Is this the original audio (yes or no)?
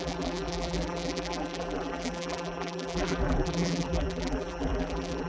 no